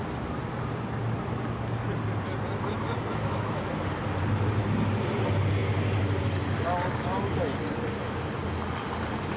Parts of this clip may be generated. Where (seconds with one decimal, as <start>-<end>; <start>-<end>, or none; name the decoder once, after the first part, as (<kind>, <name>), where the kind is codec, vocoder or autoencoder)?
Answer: 3.1-3.7 (autoencoder, DAC-VAE)

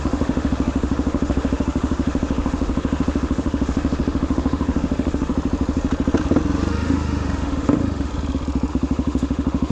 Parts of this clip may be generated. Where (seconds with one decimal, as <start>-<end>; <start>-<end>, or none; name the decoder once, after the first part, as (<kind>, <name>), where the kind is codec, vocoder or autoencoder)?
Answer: 0.0-5.3 (autoencoder, DAC-VAE); 6.7-8.1; 8.7-9.7

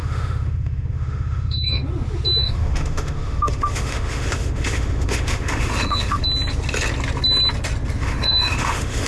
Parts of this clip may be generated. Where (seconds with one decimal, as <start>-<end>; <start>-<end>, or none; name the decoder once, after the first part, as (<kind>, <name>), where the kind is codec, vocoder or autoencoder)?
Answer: 0.0-1.8 (autoencoder, DAC-VAE); 2.4-6.2; 8.0-9.1

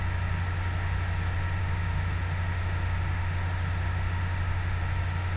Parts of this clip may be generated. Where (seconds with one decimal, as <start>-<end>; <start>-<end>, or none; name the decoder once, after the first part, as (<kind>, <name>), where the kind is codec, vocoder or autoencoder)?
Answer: 1.6-4.8 (autoencoder, DAC-VAE)

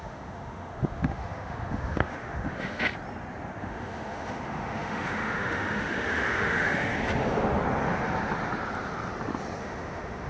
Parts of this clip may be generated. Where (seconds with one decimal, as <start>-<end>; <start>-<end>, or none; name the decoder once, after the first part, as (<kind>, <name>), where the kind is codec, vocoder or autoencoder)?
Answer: 0.0-2.9 (autoencoder, DAC-VAE); 3.6-6.9; 9.6-10.3